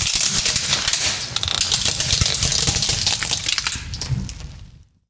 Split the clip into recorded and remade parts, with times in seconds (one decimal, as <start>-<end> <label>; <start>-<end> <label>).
0.0-5.1 recorded